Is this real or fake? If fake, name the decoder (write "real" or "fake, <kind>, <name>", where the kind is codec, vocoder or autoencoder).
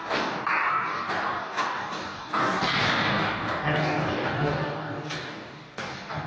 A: fake, codec, DAC